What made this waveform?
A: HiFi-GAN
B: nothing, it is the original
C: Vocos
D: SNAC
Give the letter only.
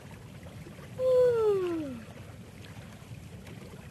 B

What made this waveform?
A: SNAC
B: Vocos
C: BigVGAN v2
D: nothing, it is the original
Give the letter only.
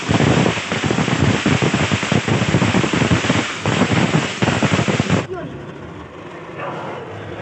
D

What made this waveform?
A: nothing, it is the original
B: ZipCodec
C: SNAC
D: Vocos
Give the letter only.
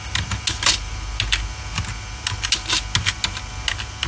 A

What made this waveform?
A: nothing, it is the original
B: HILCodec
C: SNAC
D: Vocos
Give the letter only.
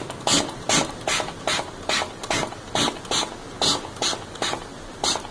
A